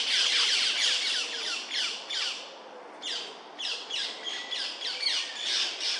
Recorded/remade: recorded